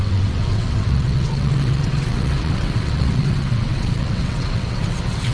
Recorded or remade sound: remade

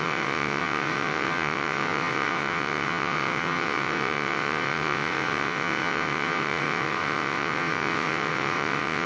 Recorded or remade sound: remade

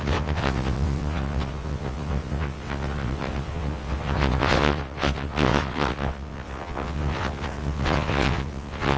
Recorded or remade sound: remade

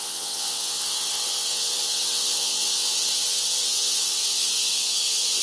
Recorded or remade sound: remade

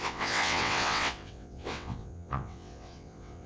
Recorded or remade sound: remade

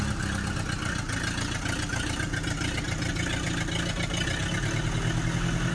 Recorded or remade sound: recorded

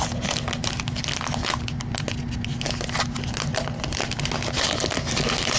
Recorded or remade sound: recorded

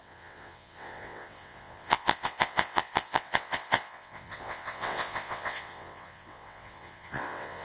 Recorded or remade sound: remade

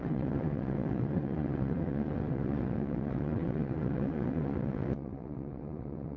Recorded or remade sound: remade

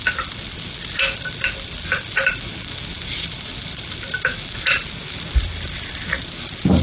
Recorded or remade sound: recorded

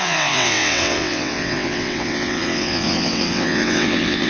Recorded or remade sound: remade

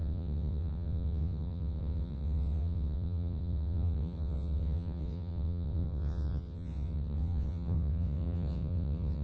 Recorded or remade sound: remade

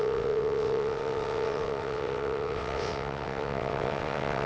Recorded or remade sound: remade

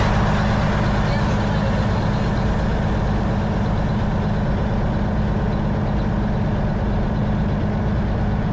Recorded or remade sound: recorded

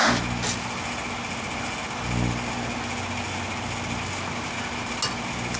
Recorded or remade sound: recorded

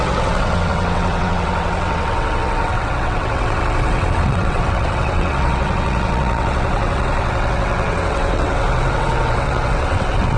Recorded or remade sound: remade